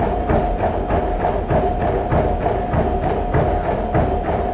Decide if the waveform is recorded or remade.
recorded